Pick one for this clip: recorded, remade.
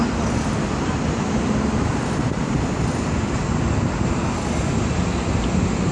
recorded